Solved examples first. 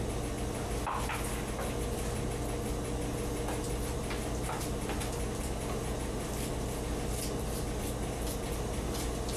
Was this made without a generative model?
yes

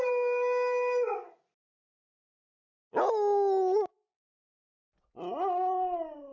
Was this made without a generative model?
yes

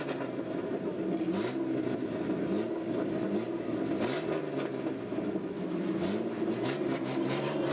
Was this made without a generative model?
yes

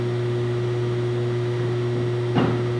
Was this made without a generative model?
yes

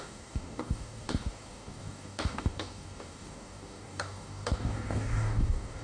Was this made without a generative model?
no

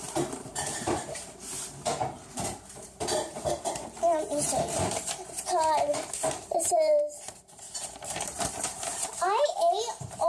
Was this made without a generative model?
no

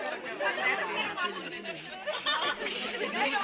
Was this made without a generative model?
yes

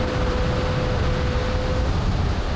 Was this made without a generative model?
yes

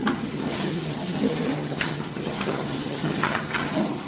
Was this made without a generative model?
no